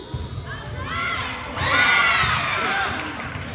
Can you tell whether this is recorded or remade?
recorded